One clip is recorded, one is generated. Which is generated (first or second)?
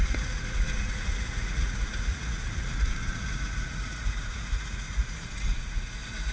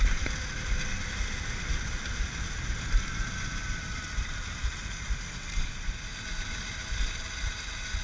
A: first